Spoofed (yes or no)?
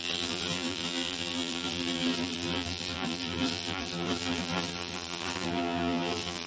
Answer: yes